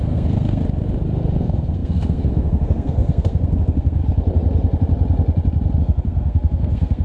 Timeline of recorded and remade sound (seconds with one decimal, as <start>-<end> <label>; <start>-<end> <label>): 0.0-0.6 remade; 0.6-1.4 recorded; 1.4-4.0 remade; 4.0-5.8 recorded; 5.8-7.0 remade